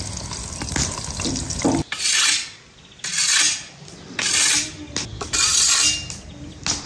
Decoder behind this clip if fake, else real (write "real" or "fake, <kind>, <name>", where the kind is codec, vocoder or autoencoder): real